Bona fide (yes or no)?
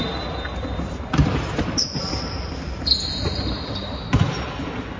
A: yes